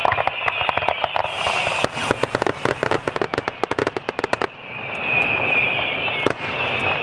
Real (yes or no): yes